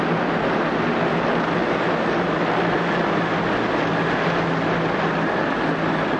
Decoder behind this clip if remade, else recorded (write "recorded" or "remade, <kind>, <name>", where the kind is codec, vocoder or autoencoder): recorded